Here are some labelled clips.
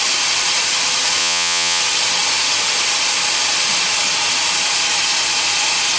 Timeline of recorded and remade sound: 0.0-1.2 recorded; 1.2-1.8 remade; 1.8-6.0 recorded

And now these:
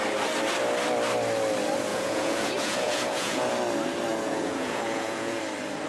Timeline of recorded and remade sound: 0.0-1.9 recorded; 1.9-3.5 remade; 3.5-4.1 recorded; 4.1-5.4 remade; 5.4-5.9 recorded

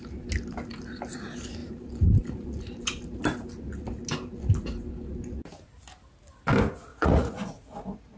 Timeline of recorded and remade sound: 0.0-6.9 recorded; 6.9-8.2 remade